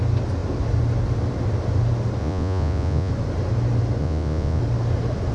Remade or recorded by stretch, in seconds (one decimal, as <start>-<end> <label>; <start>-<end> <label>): 0.0-2.2 recorded; 2.2-3.1 remade; 3.1-4.0 recorded; 4.0-4.6 remade; 4.6-5.3 recorded